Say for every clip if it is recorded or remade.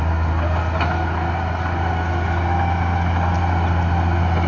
recorded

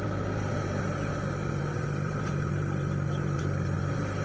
recorded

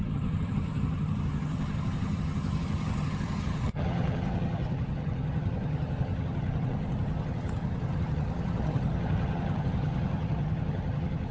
remade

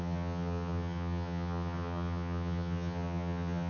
remade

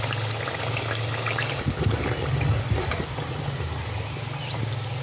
recorded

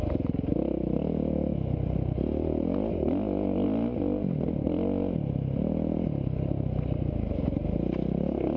recorded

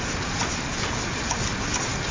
recorded